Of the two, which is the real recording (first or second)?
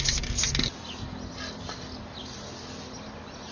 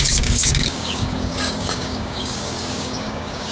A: first